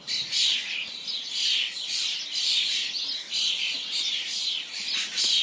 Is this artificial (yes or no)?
no